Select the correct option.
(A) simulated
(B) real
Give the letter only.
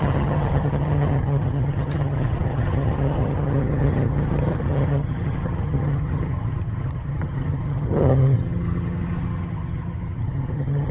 A